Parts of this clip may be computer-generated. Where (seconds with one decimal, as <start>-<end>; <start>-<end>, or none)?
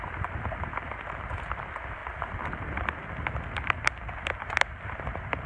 none